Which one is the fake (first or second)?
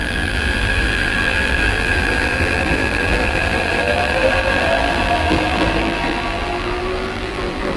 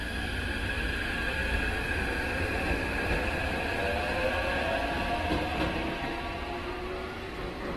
first